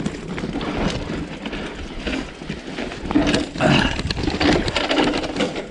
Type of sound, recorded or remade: recorded